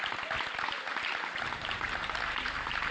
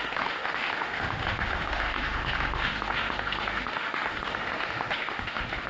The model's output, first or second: second